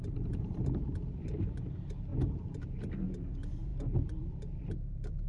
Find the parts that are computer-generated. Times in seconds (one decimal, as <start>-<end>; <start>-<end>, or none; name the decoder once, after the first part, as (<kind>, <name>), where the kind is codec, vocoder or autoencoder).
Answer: 0.0-5.3 (vocoder, BigVGAN v2)